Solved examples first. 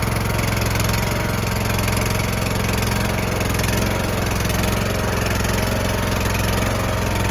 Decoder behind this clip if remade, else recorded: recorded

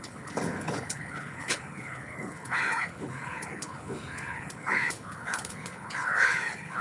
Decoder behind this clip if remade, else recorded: remade, codec, HILCodec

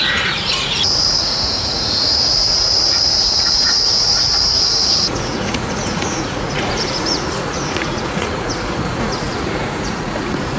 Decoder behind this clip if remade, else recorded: remade, vocoder, Vocos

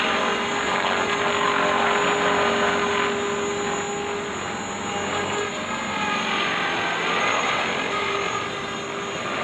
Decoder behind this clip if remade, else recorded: recorded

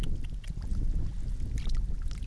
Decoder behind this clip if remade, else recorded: recorded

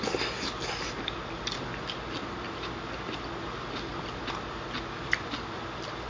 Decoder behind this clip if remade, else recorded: recorded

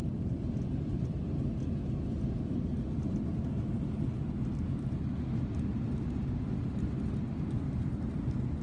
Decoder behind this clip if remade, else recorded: recorded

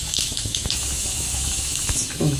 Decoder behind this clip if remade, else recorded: remade, autoencoder, DAC-VAE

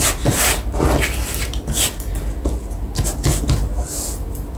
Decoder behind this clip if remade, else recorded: recorded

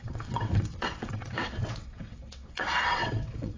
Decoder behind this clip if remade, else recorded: remade, vocoder, WaveNeXt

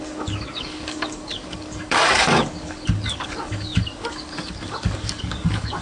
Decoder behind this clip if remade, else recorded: remade, codec, DAC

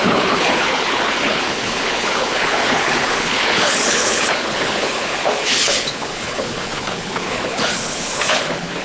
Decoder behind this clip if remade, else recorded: remade, codec, HILCodec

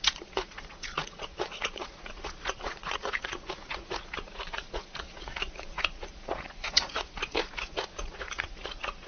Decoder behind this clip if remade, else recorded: remade, vocoder, Vocos